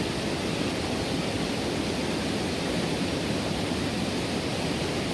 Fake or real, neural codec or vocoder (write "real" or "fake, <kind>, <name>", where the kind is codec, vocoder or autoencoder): real